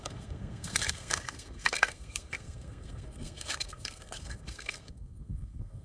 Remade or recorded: remade